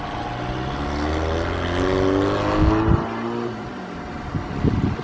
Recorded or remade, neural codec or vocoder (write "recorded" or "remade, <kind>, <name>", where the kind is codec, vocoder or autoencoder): recorded